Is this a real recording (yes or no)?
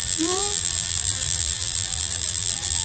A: no